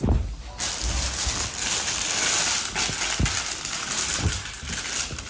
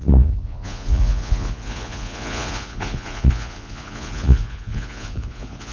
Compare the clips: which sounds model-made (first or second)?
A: second